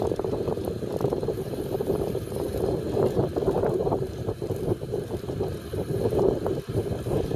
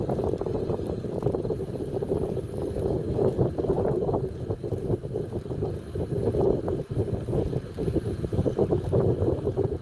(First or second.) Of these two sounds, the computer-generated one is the first